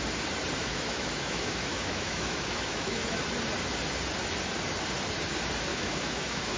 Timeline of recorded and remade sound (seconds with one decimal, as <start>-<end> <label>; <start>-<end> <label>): 0.0-0.6 recorded; 0.6-3.2 remade; 3.2-5.7 recorded; 5.7-6.6 remade